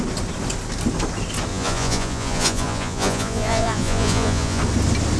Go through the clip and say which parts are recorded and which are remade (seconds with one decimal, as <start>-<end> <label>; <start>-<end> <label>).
0.0-1.5 recorded; 1.5-4.6 remade; 4.6-5.2 recorded